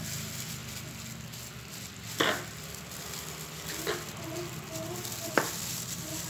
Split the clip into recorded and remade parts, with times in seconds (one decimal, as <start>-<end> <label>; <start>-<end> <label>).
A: 0.0-6.3 recorded